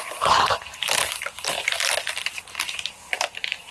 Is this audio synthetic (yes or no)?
no